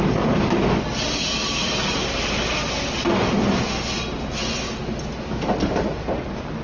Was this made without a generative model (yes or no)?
yes